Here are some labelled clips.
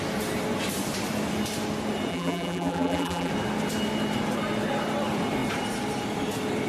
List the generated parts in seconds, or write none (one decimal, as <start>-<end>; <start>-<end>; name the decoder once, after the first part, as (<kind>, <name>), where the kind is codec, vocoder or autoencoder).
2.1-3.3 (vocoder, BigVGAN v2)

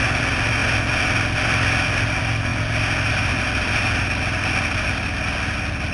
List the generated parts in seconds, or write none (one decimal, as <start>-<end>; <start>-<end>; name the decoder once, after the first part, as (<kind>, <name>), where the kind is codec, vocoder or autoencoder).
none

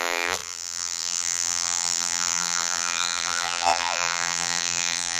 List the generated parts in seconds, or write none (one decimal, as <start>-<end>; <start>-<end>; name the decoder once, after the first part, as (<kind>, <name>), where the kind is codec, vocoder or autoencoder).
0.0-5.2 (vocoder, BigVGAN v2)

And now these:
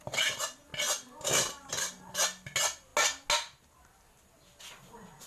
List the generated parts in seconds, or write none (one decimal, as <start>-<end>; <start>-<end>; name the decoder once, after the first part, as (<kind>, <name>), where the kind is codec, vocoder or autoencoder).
none

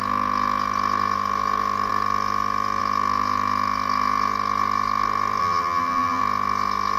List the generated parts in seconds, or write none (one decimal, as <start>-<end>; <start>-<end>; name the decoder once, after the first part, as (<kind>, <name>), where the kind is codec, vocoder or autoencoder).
5.4-6.2 (vocoder, BigVGAN v2)

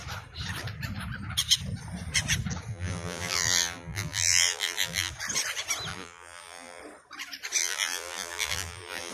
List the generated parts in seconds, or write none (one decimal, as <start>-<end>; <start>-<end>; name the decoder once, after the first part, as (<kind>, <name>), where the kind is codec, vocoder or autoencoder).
2.7-5.1 (vocoder, BigVGAN v2); 5.9-6.8; 7.6-9.1

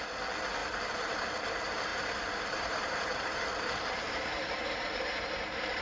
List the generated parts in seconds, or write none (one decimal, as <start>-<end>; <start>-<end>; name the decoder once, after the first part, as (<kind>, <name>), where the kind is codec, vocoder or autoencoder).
0.6-1.2 (vocoder, BigVGAN v2); 1.9-5.8

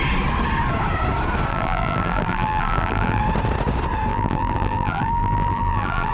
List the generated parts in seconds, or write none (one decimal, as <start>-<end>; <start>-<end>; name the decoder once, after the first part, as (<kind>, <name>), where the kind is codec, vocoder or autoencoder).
1.5-3.2 (vocoder, BigVGAN v2); 4.1-6.1